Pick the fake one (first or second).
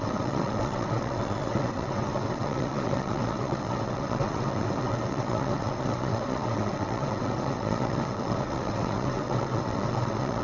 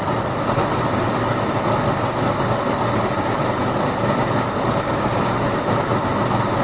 first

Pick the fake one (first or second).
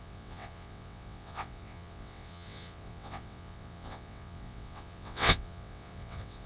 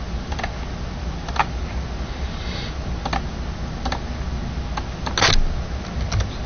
first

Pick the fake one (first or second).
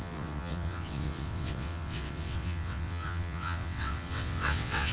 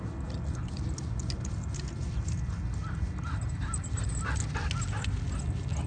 first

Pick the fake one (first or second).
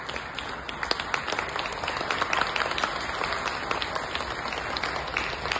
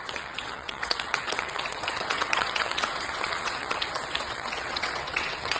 second